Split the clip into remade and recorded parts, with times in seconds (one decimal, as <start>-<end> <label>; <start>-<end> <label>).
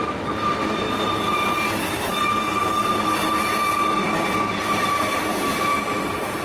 0.0-6.4 recorded